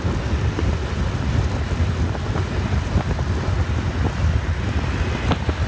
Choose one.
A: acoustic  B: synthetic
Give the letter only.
A